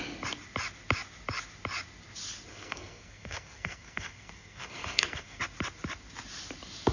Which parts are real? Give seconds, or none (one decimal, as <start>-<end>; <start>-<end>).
0.0-2.5; 5.4-6.9